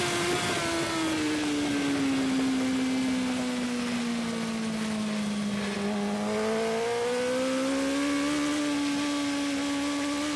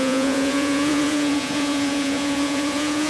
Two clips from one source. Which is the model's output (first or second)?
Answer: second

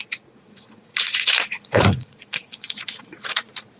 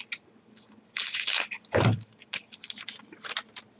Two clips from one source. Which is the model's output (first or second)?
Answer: first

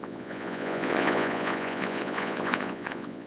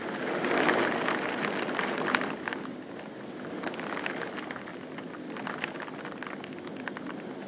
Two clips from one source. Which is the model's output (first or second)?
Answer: first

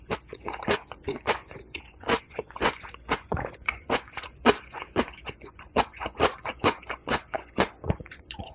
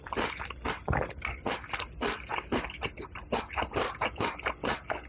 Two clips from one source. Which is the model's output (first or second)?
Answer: first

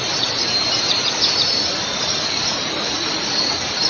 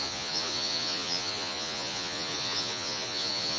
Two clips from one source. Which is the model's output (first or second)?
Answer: second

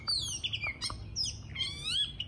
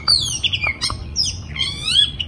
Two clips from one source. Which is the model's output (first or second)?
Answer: second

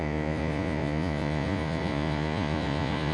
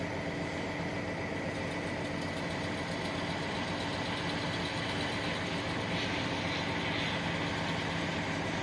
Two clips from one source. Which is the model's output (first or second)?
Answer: first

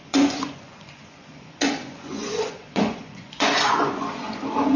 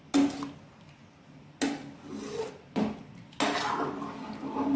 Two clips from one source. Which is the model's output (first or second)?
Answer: first